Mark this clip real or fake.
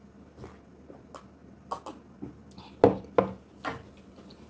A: real